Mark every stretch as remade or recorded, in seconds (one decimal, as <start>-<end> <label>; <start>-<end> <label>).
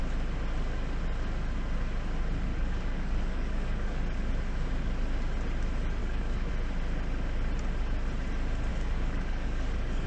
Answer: 0.0-2.5 recorded; 2.5-4.0 remade; 4.0-6.0 recorded; 6.0-6.5 remade; 6.5-8.7 recorded; 8.7-10.1 remade